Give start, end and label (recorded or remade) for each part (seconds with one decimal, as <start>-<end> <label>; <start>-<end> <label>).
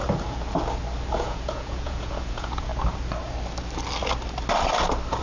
0.0-1.1 recorded; 1.1-2.7 remade; 2.7-5.2 recorded